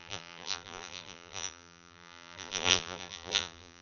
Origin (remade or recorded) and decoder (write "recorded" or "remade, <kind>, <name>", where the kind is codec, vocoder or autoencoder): remade, vocoder, BigVGAN v2